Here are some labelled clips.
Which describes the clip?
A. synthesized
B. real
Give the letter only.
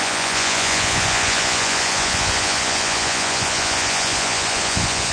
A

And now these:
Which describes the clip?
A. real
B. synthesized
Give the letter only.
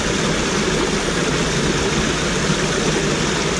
A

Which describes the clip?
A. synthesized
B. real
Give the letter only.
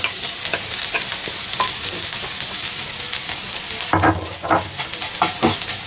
B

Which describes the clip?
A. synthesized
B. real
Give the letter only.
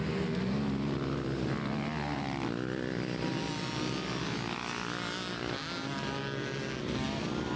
B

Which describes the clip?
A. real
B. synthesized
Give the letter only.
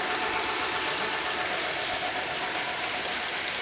A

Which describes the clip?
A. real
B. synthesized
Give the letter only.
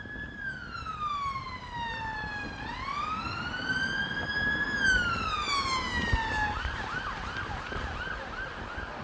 A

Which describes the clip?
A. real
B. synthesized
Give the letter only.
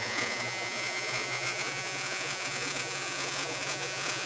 B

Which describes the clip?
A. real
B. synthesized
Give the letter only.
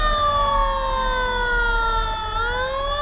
A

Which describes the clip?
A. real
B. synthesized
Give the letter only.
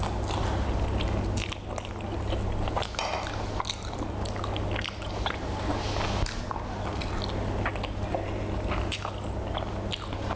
A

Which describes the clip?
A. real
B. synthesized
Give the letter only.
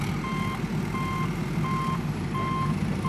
A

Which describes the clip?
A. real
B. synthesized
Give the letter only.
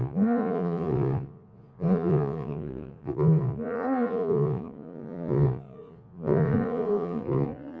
B